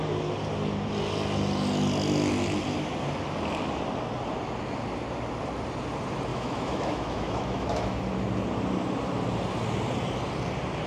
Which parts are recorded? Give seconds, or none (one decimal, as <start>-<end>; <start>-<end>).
0.0-6.3; 8.0-10.9